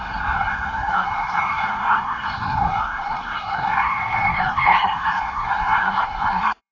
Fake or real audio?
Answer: fake